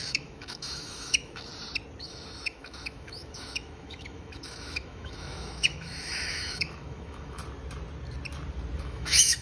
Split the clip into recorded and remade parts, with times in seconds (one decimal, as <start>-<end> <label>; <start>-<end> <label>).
0.0-1.5 remade; 1.5-2.0 recorded; 2.0-7.4 remade; 7.4-8.8 recorded; 8.8-9.4 remade